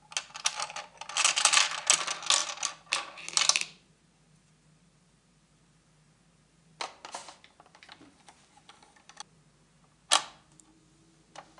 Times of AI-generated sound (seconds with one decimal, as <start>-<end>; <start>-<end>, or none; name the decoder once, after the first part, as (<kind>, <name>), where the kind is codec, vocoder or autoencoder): none